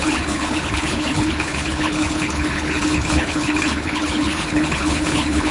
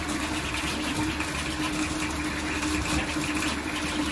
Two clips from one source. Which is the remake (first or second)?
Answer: first